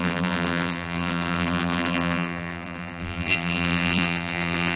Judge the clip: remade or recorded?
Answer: remade